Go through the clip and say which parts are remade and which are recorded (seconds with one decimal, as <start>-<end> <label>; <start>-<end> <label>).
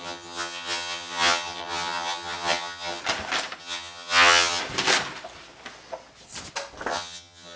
0.0-3.0 remade; 3.0-3.6 recorded; 3.6-4.6 remade; 4.6-6.9 recorded; 6.9-7.6 remade